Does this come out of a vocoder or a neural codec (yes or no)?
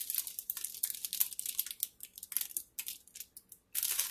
no